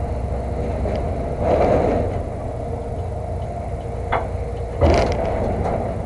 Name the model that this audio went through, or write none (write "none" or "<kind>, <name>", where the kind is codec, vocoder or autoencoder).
none